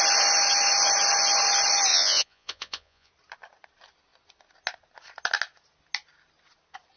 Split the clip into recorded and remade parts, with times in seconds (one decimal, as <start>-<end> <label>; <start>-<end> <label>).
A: 0.0-1.9 recorded; 1.9-3.1 remade; 3.1-7.0 recorded